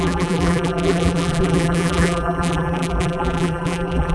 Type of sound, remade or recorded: remade